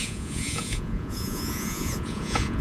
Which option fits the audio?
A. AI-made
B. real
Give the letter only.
A